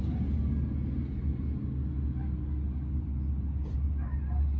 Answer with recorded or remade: recorded